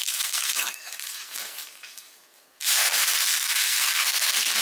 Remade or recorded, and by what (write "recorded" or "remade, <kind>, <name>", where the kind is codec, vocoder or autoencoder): remade, codec, SNAC